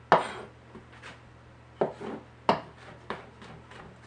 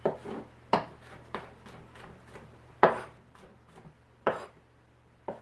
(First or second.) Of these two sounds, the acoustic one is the first